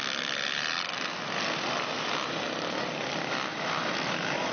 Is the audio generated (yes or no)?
no